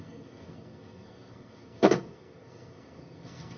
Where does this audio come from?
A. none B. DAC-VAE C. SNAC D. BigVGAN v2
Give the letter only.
C